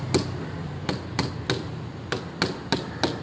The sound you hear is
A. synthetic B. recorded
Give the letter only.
B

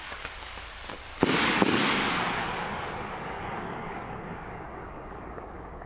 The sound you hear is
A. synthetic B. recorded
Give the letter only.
A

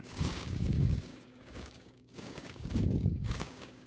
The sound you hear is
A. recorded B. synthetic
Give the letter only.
B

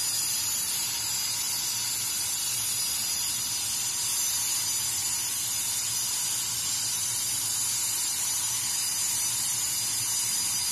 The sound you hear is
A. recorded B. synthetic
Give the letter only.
A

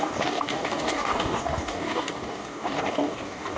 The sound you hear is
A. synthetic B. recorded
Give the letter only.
A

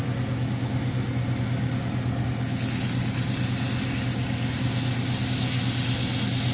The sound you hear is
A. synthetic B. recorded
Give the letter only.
B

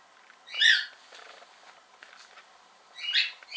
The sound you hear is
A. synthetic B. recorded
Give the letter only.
B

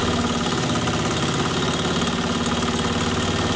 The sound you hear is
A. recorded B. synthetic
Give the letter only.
A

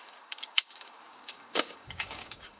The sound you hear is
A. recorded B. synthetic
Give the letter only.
B